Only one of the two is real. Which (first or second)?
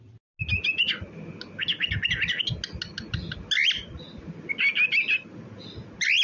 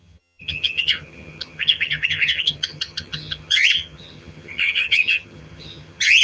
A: first